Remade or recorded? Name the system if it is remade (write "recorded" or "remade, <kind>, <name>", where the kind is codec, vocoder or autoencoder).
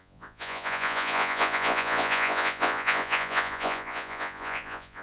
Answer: remade, vocoder, Vocos